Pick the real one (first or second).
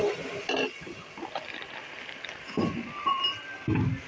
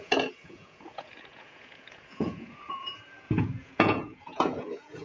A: first